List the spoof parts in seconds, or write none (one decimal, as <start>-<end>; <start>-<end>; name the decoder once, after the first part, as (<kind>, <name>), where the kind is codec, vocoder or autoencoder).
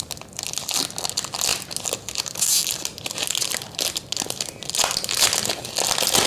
none